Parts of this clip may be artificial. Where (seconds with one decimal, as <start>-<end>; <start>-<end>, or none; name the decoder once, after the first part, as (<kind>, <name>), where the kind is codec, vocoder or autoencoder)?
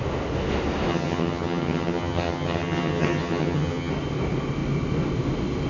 0.9-3.9 (vocoder, HiFi-GAN)